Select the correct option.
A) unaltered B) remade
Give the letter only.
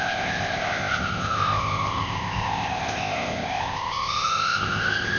B